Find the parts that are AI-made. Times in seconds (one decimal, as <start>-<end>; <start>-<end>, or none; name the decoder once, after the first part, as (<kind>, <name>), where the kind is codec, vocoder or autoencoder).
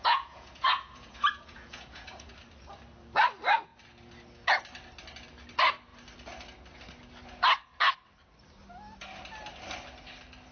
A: 0.0-2.3 (vocoder, Vocos)